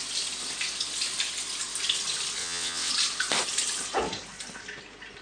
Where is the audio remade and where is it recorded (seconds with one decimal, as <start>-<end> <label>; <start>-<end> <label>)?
0.0-2.4 recorded; 2.4-2.9 remade; 2.9-5.2 recorded